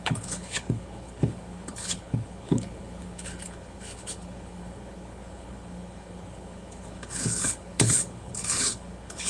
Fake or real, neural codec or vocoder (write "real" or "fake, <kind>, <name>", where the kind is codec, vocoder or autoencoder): fake, codec, HILCodec